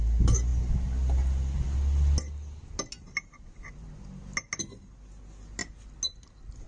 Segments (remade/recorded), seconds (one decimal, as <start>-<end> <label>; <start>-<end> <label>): 0.0-6.7 recorded